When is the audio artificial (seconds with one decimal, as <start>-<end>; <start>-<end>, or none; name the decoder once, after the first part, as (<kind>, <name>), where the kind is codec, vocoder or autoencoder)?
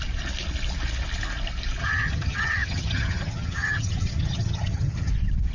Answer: 1.8-5.1 (vocoder, HiFi-GAN)